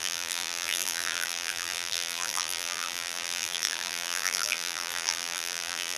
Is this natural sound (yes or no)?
no